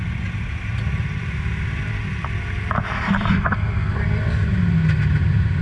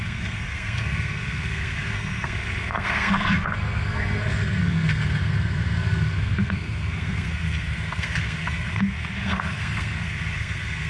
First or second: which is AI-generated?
second